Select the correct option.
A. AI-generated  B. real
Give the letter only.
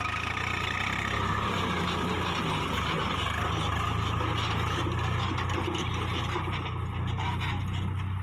B